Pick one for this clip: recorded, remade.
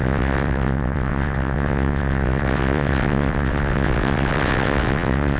remade